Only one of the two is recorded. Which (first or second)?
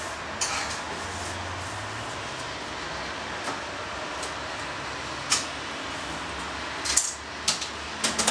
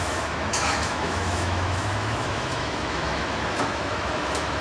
first